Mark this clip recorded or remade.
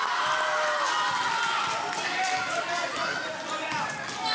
recorded